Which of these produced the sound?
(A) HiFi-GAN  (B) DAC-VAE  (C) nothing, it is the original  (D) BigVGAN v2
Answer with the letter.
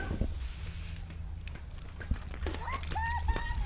C